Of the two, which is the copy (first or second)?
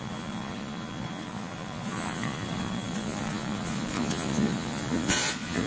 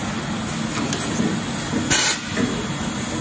first